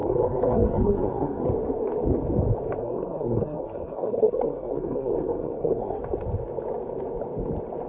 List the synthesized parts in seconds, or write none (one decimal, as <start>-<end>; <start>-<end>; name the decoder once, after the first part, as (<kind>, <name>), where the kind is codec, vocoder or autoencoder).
0.0-1.5 (codec, SNAC); 2.8-6.0